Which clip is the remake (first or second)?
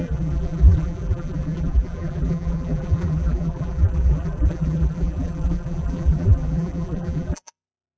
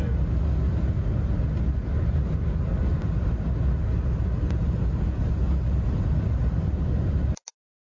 first